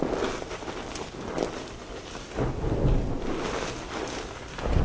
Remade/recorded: recorded